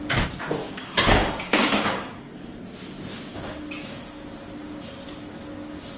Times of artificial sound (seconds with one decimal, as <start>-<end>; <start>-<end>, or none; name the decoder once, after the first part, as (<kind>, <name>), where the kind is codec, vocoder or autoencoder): 0.6-2.6 (codec, DAC); 3.3-4.3